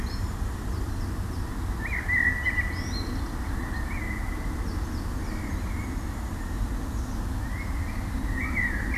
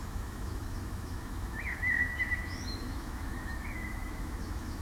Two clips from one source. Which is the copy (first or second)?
second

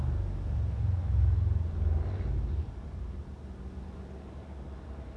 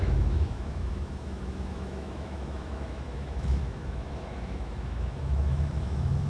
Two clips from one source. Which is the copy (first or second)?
second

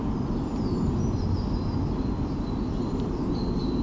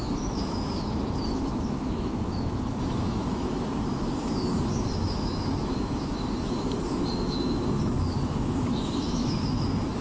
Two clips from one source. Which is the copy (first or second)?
second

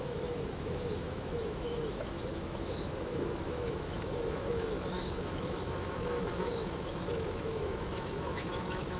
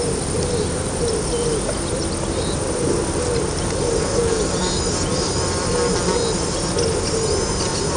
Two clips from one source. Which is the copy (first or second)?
first